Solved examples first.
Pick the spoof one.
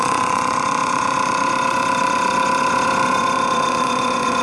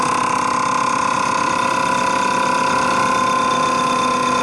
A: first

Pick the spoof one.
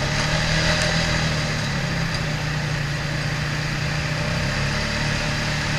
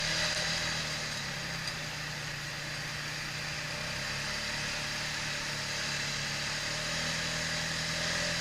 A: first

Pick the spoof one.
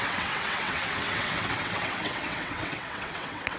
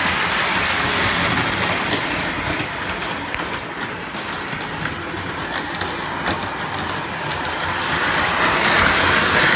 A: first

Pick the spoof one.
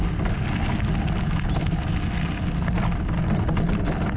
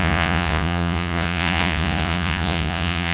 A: second